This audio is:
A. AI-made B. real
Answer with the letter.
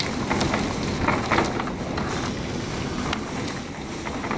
B